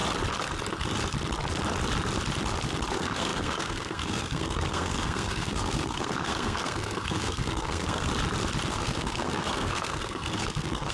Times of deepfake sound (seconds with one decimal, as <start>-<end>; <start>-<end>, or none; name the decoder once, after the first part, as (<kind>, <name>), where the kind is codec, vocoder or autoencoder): 2.9-8.1 (codec, SNAC); 8.7-10.9